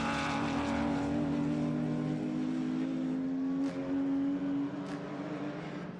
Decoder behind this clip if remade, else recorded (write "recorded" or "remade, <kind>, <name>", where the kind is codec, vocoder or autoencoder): recorded